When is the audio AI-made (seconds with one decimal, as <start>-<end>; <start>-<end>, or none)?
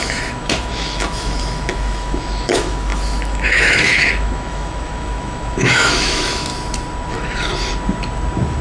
0.0-6.5; 7.1-7.5